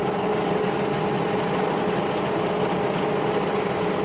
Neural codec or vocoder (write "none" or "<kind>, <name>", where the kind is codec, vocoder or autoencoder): none